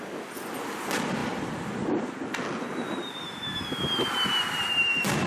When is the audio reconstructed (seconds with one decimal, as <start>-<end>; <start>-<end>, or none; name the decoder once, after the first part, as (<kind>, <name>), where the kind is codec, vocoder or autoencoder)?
none